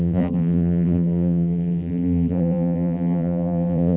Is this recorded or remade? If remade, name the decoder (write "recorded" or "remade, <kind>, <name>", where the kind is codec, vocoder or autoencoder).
remade, vocoder, BigVGAN v2